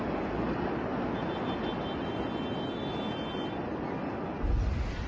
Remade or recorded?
recorded